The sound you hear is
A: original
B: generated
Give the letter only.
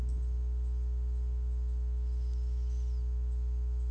A